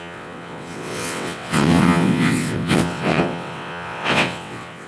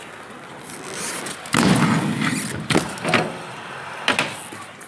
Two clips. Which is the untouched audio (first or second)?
second